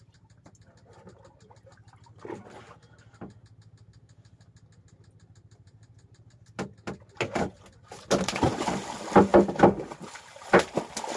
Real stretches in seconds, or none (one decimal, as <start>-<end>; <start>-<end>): 0.0-11.2